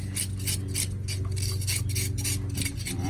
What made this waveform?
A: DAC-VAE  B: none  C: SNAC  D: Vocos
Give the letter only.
B